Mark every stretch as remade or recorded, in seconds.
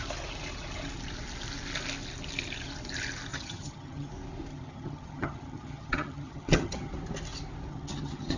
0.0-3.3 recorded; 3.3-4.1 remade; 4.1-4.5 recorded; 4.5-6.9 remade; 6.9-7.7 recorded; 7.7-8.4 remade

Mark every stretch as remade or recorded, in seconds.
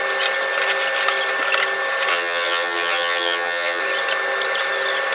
0.0-2.1 recorded; 2.1-3.8 remade; 3.8-5.1 recorded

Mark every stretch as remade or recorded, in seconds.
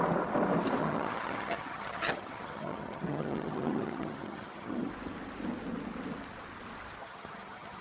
0.0-0.8 recorded; 0.8-4.9 remade; 4.9-7.0 recorded; 7.0-7.8 remade